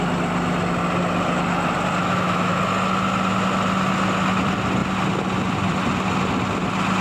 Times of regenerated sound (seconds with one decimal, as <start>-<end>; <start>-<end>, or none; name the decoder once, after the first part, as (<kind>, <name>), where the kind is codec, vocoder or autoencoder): 2.0-2.6 (autoencoder, DAC-VAE)